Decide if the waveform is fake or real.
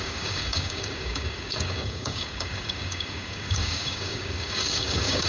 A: fake